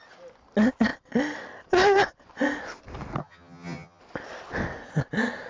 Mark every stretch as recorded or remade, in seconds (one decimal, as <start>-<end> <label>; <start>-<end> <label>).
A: 0.0-3.2 recorded; 3.2-4.0 remade; 4.0-5.5 recorded